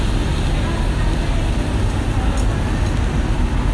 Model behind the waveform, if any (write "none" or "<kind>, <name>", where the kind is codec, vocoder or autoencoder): none